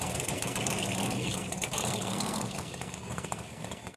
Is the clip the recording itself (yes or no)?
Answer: no